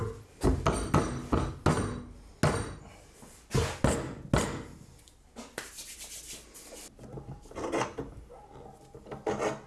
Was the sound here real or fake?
real